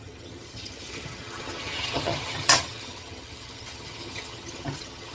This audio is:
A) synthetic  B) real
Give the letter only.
A